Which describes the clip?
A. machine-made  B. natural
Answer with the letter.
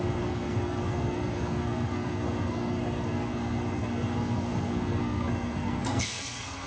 A